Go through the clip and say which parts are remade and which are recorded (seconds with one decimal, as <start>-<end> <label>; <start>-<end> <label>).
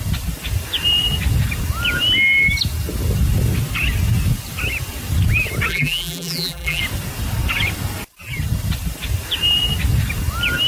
0.0-5.7 recorded; 5.7-6.8 remade; 6.8-10.7 recorded